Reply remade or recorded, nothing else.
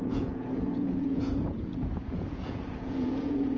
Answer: remade